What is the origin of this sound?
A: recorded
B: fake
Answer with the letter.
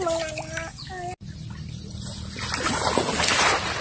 A